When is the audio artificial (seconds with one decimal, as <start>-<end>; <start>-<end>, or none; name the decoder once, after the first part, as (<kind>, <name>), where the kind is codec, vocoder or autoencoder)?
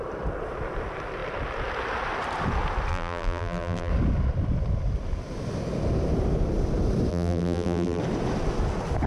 2.9-3.9 (vocoder, BigVGAN v2); 7.1-8.0